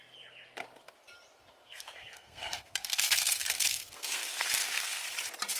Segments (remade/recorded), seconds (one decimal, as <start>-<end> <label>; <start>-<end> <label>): 0.0-1.6 recorded; 1.6-5.0 remade; 5.0-5.6 recorded